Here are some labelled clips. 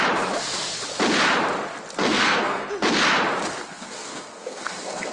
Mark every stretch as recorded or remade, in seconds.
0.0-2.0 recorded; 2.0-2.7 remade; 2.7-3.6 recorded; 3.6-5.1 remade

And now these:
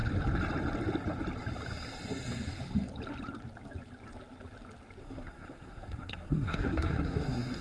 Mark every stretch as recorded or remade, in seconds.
0.0-5.0 recorded; 5.0-7.6 remade

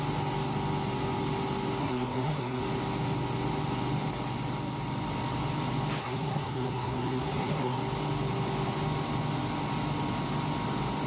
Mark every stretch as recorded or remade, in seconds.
0.0-1.8 recorded; 1.8-2.6 remade; 2.6-6.0 recorded; 6.0-7.8 remade; 7.8-11.1 recorded

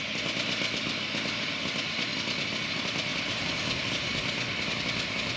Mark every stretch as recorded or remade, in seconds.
0.0-5.4 recorded

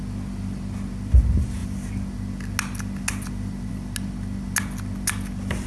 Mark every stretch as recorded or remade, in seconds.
0.0-5.7 recorded